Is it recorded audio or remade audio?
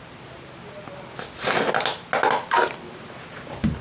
recorded